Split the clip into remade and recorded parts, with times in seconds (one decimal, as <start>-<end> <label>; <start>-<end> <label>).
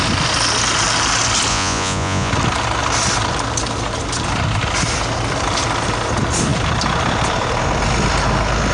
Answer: 0.0-1.5 recorded; 1.5-2.3 remade; 2.3-8.7 recorded